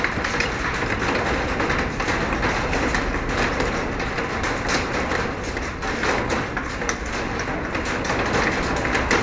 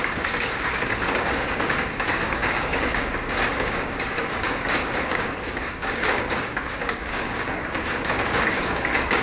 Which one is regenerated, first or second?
second